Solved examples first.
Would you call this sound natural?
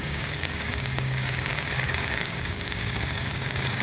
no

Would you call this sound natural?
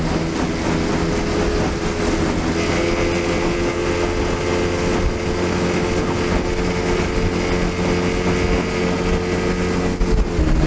yes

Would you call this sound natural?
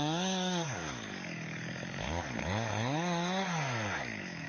no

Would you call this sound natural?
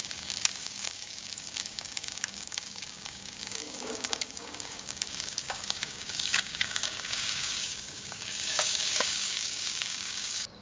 no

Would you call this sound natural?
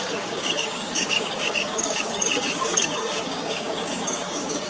no